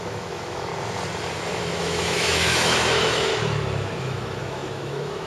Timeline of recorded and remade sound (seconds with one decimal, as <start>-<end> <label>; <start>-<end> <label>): 0.0-0.7 remade; 0.7-1.8 recorded; 1.8-3.3 remade; 3.3-4.0 recorded; 4.0-5.3 remade